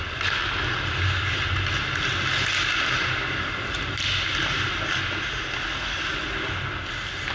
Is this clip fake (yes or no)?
no